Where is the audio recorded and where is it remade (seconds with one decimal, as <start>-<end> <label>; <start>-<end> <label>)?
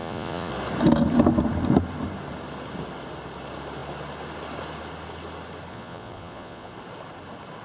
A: 0.0-0.5 remade; 0.5-5.7 recorded; 5.7-6.7 remade; 6.7-7.6 recorded